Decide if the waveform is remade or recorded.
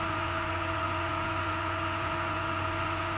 remade